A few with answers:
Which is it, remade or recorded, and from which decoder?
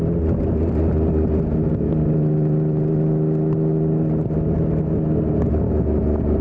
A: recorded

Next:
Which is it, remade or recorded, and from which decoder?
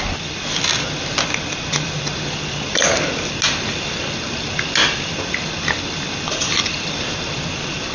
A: recorded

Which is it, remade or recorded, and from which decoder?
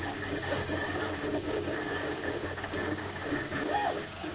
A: remade, codec, DAC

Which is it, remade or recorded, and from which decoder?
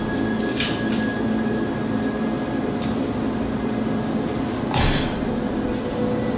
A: recorded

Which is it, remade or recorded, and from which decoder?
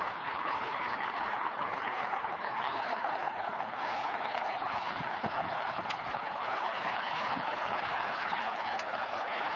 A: remade, codec, HILCodec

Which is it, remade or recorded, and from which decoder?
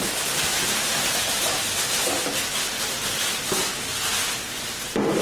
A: recorded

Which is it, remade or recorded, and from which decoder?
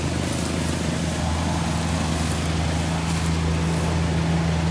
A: recorded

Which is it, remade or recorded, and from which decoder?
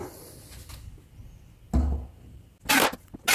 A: recorded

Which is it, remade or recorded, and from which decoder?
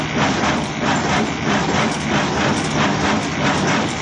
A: recorded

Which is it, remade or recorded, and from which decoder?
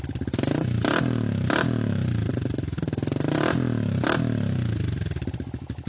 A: recorded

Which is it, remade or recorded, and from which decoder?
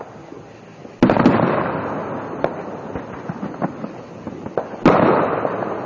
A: recorded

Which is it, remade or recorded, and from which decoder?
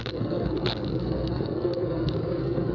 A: remade, codec, SNAC